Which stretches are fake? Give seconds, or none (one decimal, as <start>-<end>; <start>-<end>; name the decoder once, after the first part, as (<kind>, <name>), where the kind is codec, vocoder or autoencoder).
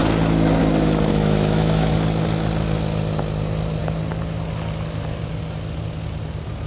1.1-1.9 (autoencoder, DAC-VAE)